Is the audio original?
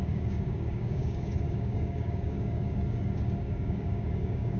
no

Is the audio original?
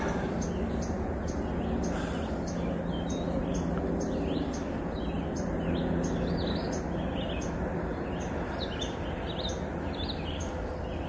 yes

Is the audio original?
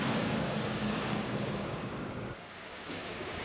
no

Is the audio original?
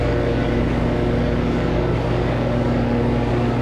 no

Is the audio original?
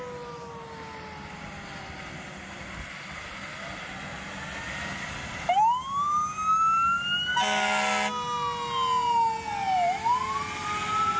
yes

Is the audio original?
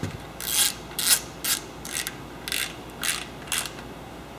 yes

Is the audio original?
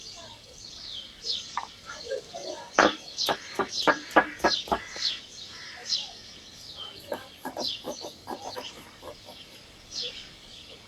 no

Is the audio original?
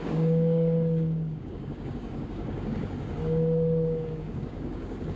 no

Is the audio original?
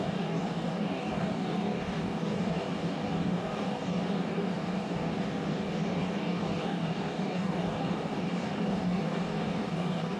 no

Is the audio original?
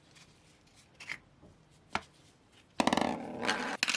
yes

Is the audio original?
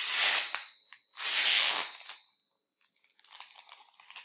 yes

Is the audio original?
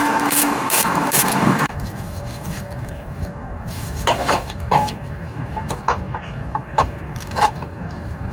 no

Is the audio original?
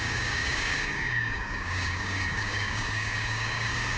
no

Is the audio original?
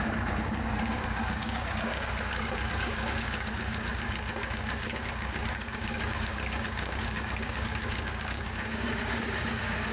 no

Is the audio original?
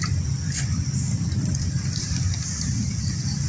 yes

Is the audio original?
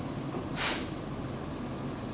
yes